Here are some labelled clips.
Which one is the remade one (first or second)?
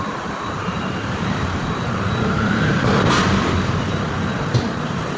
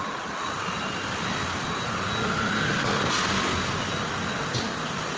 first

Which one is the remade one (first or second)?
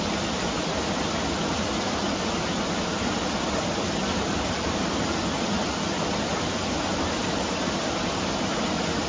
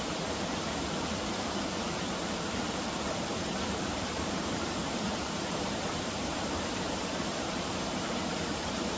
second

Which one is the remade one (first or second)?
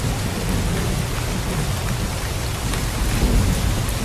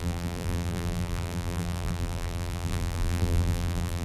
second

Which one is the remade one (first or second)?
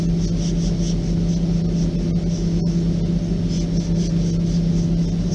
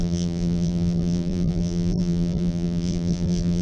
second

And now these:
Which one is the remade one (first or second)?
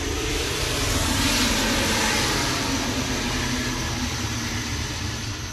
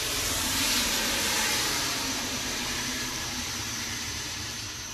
second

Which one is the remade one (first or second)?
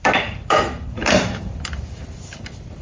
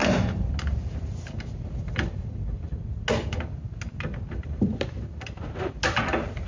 first